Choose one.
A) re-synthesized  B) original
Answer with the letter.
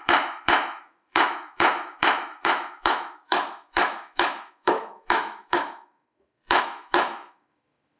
A